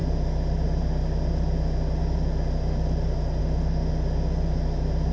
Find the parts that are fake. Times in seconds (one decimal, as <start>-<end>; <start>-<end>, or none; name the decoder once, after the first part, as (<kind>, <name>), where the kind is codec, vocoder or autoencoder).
3.4-3.9 (autoencoder, DAC-VAE)